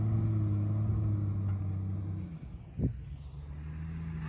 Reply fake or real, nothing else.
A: real